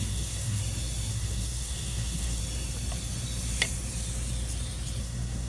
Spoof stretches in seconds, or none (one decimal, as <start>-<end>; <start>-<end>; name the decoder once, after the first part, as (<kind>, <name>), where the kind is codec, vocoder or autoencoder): 0.0-0.6 (codec, SNAC); 1.1-2.4; 5.0-5.5